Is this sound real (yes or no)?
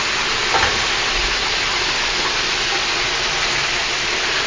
yes